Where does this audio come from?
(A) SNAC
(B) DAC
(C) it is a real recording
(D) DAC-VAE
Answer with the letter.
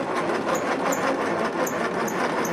C